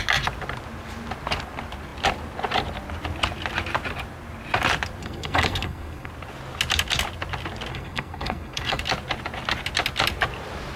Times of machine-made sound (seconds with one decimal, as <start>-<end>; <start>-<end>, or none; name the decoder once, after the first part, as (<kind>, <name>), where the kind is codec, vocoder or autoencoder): 5.0-6.1 (codec, SNAC); 7.7-8.8